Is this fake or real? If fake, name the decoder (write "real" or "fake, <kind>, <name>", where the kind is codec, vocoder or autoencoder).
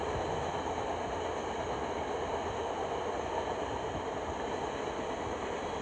real